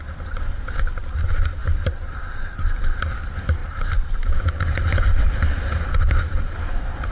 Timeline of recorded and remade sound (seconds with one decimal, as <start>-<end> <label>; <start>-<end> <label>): 0.0-1.6 recorded; 1.6-2.8 remade; 2.8-3.6 recorded; 3.6-7.1 remade